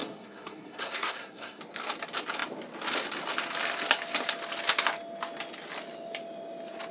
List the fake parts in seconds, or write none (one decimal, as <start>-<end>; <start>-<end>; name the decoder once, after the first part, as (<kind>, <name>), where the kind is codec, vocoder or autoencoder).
0.0-1.6 (codec, SNAC)